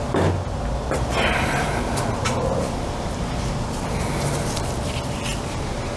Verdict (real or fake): real